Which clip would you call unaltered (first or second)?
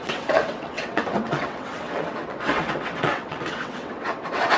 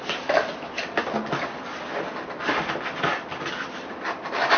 second